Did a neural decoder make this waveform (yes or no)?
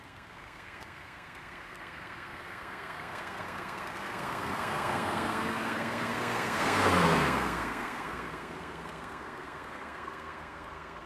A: yes